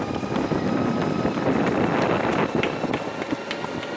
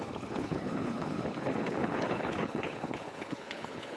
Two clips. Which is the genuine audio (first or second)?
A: first